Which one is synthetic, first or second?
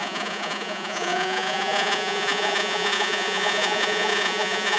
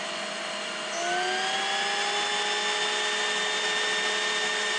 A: first